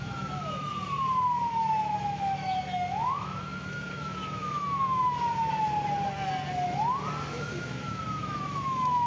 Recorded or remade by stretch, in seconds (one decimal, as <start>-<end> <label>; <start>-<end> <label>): 0.0-0.7 remade; 0.7-1.5 recorded; 1.5-5.5 remade; 5.5-7.3 recorded; 7.3-9.1 remade